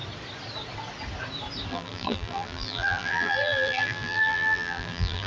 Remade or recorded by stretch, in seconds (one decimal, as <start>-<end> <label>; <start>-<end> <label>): 0.0-1.7 recorded; 1.7-5.3 remade